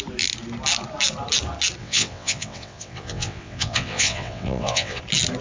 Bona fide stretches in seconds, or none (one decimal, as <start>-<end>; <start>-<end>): 0.0-1.8; 5.0-5.4